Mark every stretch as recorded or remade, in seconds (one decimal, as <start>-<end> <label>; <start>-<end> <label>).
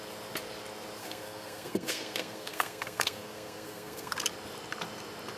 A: 0.0-1.0 recorded; 1.0-4.2 remade; 4.2-5.4 recorded